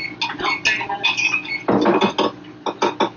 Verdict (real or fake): real